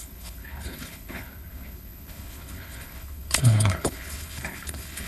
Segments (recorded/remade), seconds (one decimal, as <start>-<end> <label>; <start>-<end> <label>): 0.0-5.1 remade